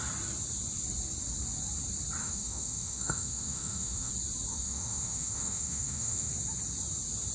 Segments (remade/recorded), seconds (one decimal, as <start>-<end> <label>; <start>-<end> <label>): 0.0-2.2 recorded; 2.2-4.1 remade; 4.1-4.5 recorded; 4.5-6.3 remade; 6.3-7.3 recorded

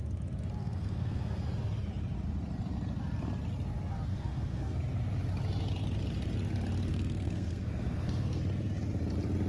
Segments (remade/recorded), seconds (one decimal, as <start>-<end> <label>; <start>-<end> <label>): 0.0-0.6 recorded; 0.6-1.4 remade; 1.4-4.1 recorded; 4.1-4.8 remade; 4.8-6.9 recorded; 6.9-8.4 remade; 8.4-9.5 recorded

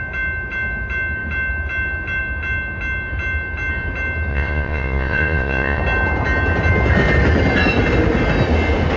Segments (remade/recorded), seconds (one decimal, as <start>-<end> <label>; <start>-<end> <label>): 0.0-4.3 recorded; 4.3-5.8 remade; 5.8-9.0 recorded